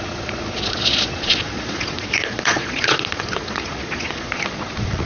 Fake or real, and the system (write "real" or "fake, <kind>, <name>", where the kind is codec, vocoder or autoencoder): fake, vocoder, Vocos